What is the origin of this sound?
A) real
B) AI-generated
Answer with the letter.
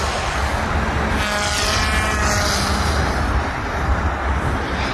A